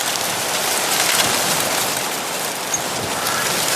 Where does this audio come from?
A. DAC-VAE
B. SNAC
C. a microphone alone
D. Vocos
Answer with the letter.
C